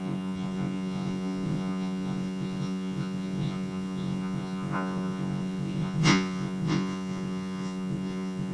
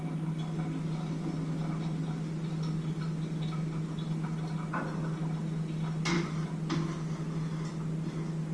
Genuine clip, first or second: second